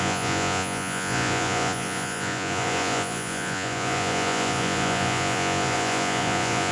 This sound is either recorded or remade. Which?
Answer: remade